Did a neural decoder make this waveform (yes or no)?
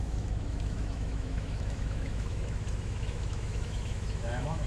yes